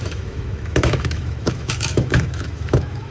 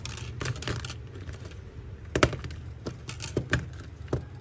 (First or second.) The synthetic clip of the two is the first